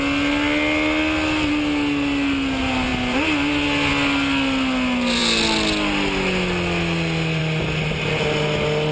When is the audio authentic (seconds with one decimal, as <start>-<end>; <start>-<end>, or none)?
0.0-8.9